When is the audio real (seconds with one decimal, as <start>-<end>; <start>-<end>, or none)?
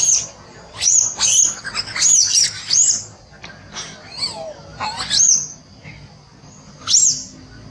0.0-7.7